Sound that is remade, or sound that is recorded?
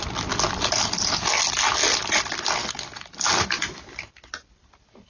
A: recorded